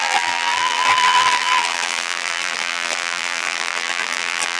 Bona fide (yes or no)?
no